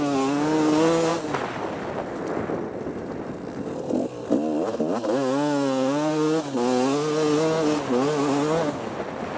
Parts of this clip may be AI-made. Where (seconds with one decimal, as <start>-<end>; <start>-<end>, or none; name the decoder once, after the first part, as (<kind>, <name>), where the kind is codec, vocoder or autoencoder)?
none